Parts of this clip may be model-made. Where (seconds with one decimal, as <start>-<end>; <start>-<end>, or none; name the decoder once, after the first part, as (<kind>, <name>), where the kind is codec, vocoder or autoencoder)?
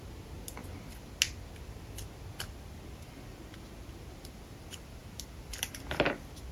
none